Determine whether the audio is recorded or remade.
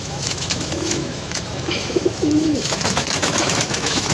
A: remade